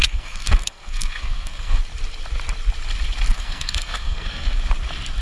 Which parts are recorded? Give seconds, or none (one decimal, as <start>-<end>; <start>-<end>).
1.8-3.3; 4.6-5.2